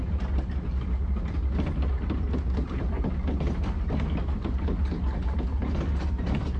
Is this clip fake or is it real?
real